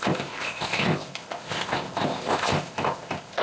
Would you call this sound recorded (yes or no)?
no